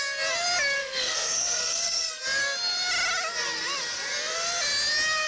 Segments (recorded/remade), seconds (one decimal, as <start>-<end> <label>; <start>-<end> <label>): 0.0-0.8 recorded; 0.8-2.2 remade; 2.2-5.3 recorded